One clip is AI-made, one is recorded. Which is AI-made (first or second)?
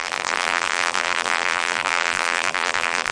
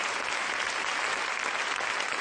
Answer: first